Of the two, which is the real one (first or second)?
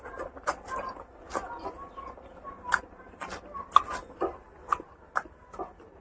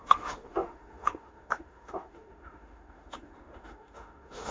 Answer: first